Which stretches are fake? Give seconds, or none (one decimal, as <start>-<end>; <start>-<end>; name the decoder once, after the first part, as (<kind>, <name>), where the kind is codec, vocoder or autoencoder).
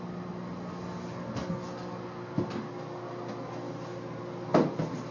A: none